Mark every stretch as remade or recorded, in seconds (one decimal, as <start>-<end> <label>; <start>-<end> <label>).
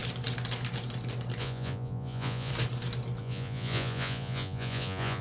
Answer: 0.0-1.4 recorded; 1.4-2.5 remade; 2.5-3.2 recorded; 3.2-5.2 remade